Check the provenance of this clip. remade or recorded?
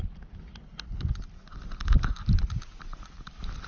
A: recorded